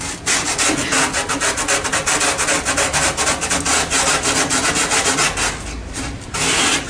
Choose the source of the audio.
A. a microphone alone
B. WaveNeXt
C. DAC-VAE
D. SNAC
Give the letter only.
A